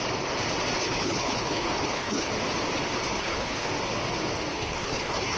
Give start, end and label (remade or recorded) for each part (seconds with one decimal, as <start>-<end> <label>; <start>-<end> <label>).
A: 0.0-0.8 recorded; 0.8-2.3 remade; 2.3-3.1 recorded; 3.1-3.7 remade; 3.7-4.5 recorded; 4.5-5.4 remade